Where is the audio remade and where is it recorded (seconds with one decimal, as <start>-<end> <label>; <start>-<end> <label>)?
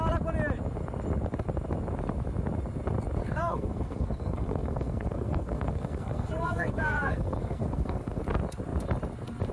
0.0-3.2 recorded; 3.2-8.2 remade; 8.2-9.5 recorded